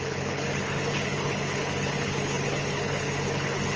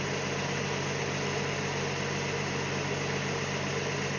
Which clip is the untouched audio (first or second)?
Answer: second